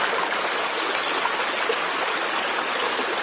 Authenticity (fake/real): real